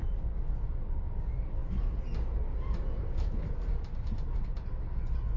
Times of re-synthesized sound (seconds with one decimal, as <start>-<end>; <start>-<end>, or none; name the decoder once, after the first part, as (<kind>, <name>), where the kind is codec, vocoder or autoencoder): none